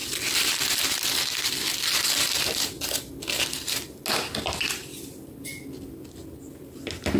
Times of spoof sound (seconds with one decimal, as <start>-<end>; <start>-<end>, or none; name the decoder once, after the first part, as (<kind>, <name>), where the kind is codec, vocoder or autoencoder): 0.0-2.8 (vocoder, BigVGAN v2)